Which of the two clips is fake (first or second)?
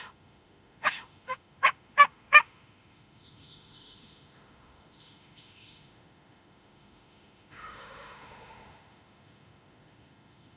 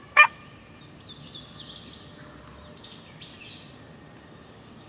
first